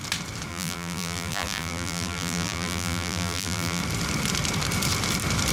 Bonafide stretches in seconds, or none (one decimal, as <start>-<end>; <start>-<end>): 0.0-0.5; 3.8-5.5